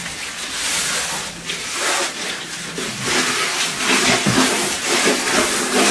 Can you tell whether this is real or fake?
real